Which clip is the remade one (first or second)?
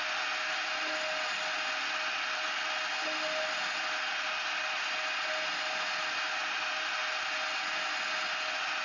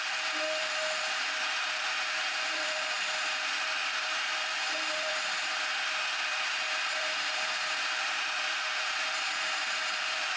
second